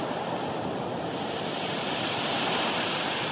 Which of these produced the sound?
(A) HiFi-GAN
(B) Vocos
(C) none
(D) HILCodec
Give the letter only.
C